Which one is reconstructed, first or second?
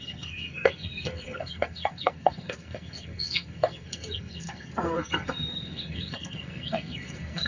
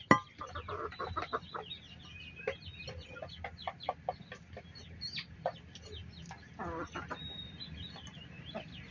first